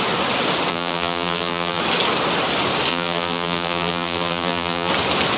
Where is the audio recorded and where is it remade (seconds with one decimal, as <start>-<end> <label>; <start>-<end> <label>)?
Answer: 0.0-0.7 recorded; 0.7-1.8 remade; 1.8-2.9 recorded; 2.9-4.9 remade; 4.9-5.4 recorded